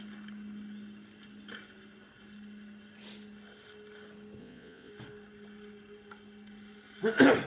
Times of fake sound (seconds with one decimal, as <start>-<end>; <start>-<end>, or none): 4.4-4.9